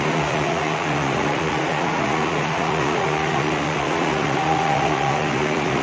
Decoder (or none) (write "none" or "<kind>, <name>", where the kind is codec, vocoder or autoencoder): vocoder, Vocos